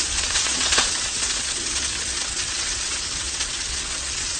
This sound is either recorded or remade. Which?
remade